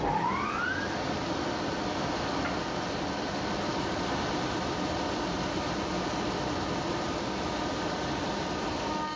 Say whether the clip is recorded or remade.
recorded